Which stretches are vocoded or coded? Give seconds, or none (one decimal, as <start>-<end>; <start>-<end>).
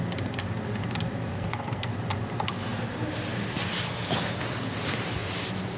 1.3-1.9